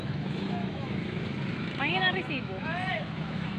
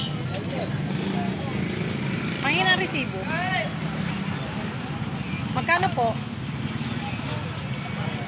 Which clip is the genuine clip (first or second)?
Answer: second